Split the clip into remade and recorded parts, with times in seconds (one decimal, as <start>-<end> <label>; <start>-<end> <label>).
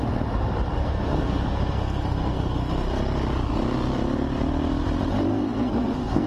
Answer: 0.0-0.8 recorded; 0.8-2.9 remade; 2.9-5.3 recorded; 5.3-6.3 remade